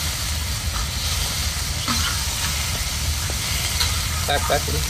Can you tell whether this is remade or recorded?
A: remade